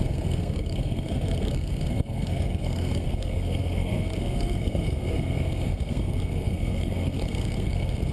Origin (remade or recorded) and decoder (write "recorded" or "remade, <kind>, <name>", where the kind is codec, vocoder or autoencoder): remade, codec, SNAC